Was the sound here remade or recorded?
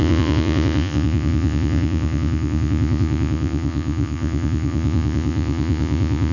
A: remade